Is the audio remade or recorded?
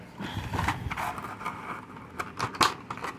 recorded